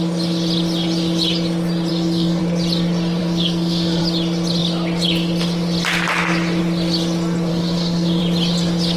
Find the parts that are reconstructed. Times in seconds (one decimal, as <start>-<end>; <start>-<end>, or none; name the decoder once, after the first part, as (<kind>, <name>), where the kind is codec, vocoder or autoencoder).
1.9-2.4 (codec, SNAC); 3.2-4.0; 7.5-8.2